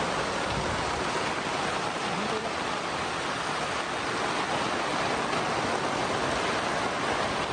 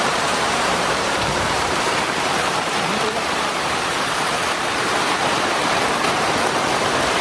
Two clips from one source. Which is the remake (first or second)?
second